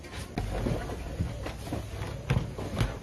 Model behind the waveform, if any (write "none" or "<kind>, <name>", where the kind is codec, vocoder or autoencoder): none